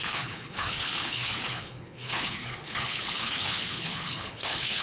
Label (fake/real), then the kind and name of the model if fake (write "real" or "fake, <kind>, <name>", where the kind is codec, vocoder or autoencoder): fake, codec, HILCodec